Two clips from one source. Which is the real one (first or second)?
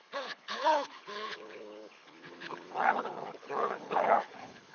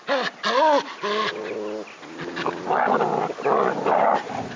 second